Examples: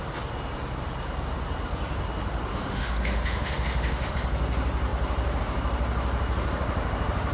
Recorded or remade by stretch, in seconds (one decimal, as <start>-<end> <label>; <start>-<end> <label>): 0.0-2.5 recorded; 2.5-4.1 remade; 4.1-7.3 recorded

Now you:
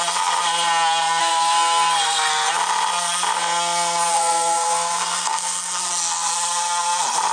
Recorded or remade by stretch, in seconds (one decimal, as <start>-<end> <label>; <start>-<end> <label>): 0.0-1.2 recorded; 1.2-2.5 remade; 2.5-4.1 recorded; 4.1-5.8 remade; 5.8-7.3 recorded

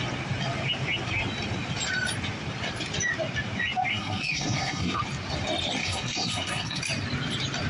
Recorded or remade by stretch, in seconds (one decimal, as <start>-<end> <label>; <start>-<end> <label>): 0.0-3.9 recorded; 3.9-5.0 remade; 5.0-5.8 recorded; 5.8-6.8 remade; 6.8-7.7 recorded